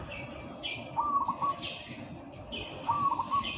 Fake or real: real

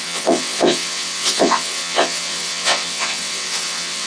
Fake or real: fake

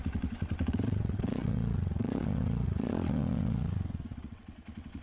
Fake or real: fake